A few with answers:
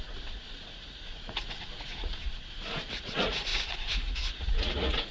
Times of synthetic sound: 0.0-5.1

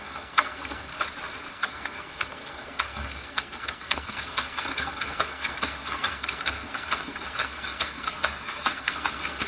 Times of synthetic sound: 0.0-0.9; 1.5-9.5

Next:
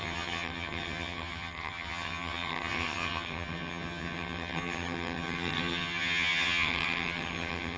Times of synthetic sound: 0.0-7.8

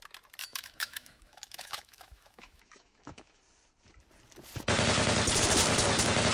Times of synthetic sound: 0.4-3.4

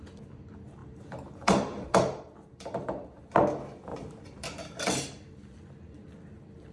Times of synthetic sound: 0.8-3.2; 3.9-4.8